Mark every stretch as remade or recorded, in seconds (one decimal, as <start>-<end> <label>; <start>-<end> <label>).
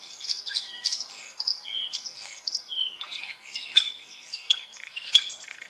0.0-5.7 remade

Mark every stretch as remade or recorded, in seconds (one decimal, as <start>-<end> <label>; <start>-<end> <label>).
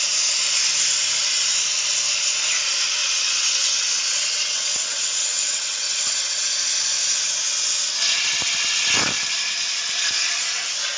0.0-3.0 recorded; 3.0-6.5 remade; 6.5-11.0 recorded